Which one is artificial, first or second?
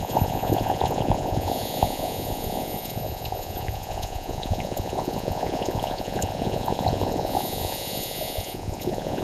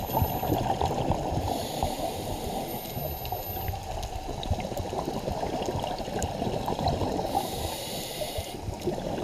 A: first